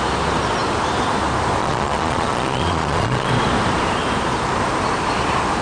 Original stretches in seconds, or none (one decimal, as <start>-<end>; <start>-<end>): 0.0-1.6; 3.3-5.6